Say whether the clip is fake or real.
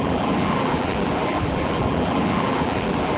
fake